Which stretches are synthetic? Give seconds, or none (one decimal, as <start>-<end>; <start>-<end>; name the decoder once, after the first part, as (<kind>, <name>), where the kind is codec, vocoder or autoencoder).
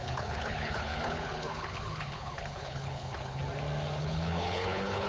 0.0-3.4 (codec, HILCodec); 4.0-5.1